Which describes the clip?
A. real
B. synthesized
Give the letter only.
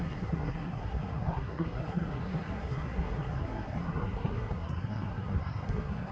B